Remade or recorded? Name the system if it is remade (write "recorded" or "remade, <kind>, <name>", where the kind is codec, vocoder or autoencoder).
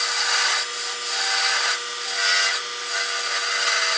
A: recorded